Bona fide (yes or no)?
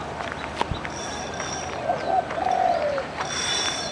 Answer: yes